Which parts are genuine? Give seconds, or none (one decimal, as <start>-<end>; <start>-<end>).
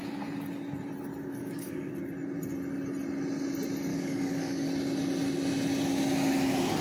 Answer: 0.0-1.4; 1.9-3.9; 4.7-6.8